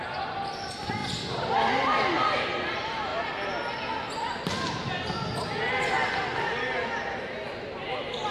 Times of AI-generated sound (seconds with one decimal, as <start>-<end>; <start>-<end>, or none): none